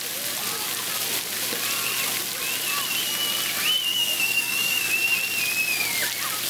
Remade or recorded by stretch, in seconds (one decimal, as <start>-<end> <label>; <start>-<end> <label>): 0.0-3.9 recorded; 3.9-4.9 remade; 4.9-6.5 recorded